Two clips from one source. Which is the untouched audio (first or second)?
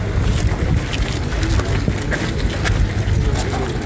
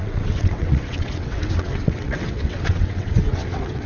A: first